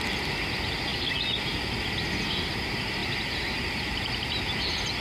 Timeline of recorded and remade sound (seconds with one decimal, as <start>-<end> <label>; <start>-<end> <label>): 0.0-5.0 recorded